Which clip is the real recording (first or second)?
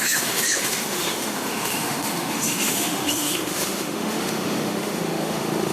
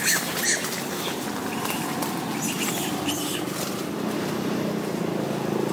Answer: second